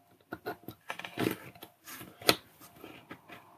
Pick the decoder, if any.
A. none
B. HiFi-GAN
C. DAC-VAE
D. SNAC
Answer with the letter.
A